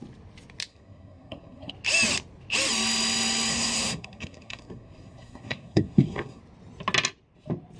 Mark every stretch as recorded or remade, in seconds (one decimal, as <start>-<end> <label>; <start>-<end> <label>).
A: 0.0-0.7 recorded; 0.7-1.7 remade; 1.7-3.5 recorded; 3.5-6.4 remade; 6.4-7.8 recorded